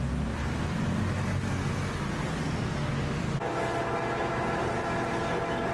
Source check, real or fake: real